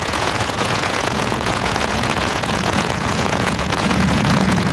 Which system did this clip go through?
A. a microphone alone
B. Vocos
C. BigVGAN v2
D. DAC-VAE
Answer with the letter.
B